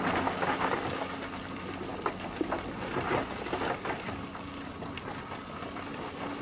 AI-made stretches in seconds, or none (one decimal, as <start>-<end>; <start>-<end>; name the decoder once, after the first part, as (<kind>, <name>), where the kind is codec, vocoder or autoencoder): none